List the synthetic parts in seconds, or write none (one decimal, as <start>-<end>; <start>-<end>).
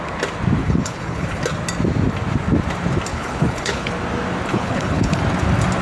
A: 0.6-1.4; 3.1-3.9; 4.5-5.2